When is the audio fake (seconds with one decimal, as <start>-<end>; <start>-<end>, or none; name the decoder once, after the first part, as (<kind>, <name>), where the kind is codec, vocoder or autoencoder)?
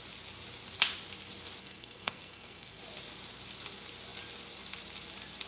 1.6-2.8 (codec, SNAC)